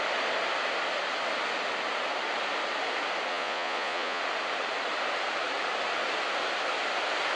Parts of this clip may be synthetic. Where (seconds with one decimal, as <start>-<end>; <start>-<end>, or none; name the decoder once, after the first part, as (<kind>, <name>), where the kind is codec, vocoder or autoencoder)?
3.3-4.2 (vocoder, Vocos)